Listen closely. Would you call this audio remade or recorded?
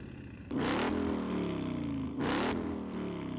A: recorded